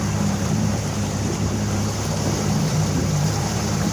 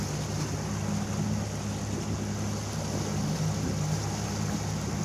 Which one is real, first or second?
second